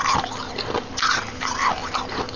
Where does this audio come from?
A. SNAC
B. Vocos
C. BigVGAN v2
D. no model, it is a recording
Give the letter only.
D